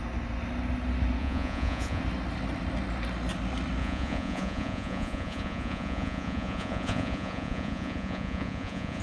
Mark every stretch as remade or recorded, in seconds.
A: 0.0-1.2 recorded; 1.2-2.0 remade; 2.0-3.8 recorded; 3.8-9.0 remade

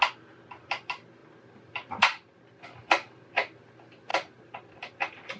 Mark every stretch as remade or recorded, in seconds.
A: 0.0-5.4 recorded

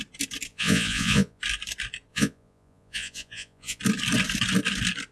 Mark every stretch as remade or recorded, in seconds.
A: 0.0-0.5 recorded; 0.5-1.4 remade; 1.4-2.1 recorded; 2.1-3.8 remade; 3.8-5.1 recorded